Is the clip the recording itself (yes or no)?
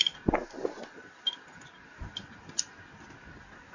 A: yes